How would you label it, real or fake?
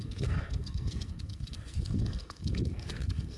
fake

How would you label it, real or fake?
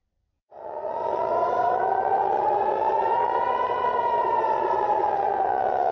fake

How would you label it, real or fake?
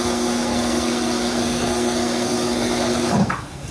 fake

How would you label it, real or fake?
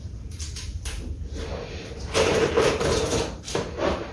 fake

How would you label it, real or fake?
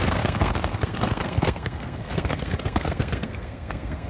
fake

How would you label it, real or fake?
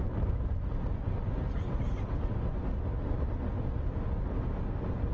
real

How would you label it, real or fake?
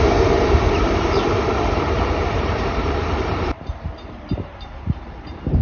fake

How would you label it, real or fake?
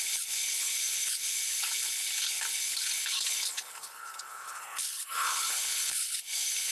fake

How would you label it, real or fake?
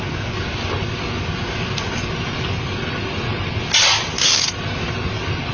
real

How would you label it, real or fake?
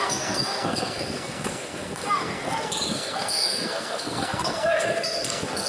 fake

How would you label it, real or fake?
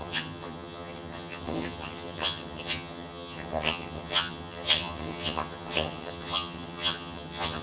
fake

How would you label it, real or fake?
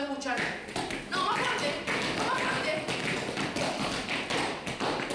real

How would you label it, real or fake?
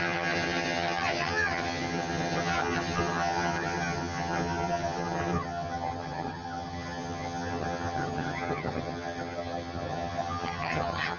fake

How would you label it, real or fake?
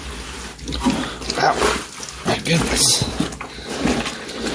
real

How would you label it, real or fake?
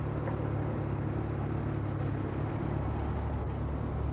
real